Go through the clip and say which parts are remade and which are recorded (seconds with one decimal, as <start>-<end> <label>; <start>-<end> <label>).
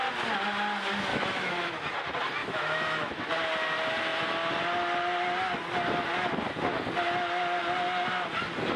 0.0-1.1 recorded; 1.1-1.7 remade; 1.7-2.4 recorded; 2.4-3.3 remade; 3.3-8.8 recorded